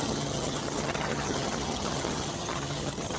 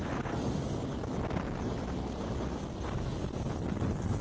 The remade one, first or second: first